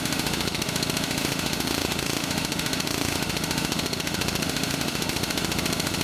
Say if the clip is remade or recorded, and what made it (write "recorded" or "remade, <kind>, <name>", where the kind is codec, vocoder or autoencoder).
remade, autoencoder, DAC-VAE